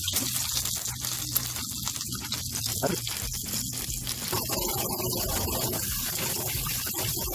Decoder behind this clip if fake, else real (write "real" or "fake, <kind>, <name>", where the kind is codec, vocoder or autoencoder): real